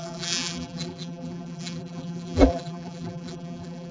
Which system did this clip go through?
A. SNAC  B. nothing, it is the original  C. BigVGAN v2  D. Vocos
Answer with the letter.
C